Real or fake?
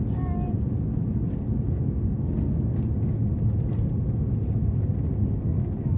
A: real